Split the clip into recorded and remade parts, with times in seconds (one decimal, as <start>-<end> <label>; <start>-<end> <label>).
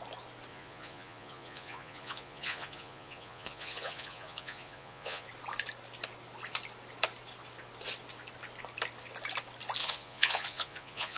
0.0-0.5 recorded; 0.5-5.3 remade; 5.3-9.8 recorded; 9.8-11.2 remade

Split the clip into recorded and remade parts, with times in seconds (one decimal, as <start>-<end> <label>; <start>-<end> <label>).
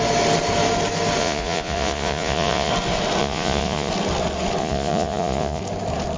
0.0-1.2 recorded; 1.2-2.7 remade; 2.7-3.2 recorded; 3.2-3.9 remade; 3.9-4.6 recorded; 4.6-5.6 remade; 5.6-6.2 recorded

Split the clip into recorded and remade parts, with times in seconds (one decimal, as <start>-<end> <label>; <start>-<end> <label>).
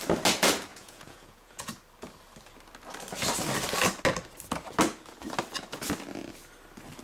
0.0-0.7 recorded; 0.7-1.7 remade; 1.7-7.0 recorded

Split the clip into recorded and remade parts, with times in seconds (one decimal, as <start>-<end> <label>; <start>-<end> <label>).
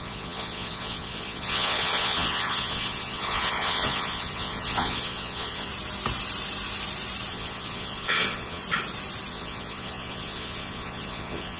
0.0-5.7 remade; 5.7-7.3 recorded; 7.3-8.6 remade; 8.6-9.3 recorded; 9.3-11.6 remade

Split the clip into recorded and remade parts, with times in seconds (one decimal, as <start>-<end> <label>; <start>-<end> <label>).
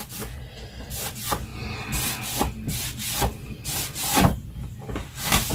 0.0-5.5 recorded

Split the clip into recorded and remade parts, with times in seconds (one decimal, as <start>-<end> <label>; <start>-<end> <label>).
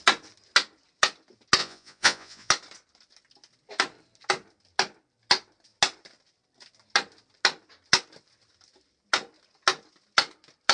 0.0-1.6 recorded; 1.6-2.5 remade; 2.5-10.7 recorded